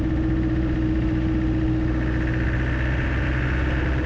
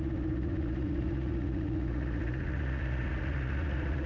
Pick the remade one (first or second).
second